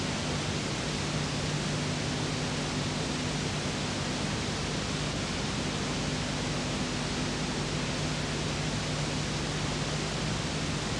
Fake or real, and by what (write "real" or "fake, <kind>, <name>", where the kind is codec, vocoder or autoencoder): real